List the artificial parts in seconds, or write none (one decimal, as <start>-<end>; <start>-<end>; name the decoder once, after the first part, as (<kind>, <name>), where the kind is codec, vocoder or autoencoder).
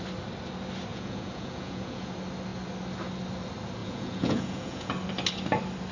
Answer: 0.9-2.1 (vocoder, Vocos); 3.8-4.9